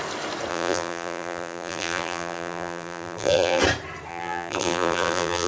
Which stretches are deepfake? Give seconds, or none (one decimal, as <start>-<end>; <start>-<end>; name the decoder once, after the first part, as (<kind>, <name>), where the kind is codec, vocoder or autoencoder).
0.5-3.6 (vocoder, BigVGAN v2); 4.1-5.5